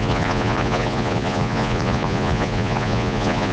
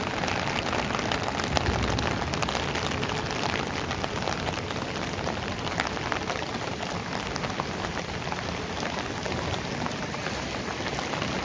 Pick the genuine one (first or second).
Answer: second